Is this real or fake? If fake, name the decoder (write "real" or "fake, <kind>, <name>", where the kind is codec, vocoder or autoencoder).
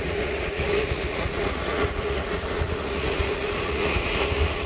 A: fake, vocoder, Vocos